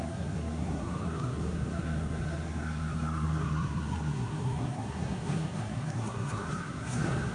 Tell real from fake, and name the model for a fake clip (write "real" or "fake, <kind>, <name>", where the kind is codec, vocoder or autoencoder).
fake, codec, SNAC